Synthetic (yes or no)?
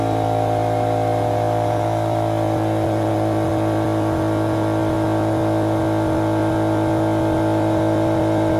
no